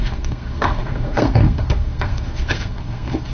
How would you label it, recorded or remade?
remade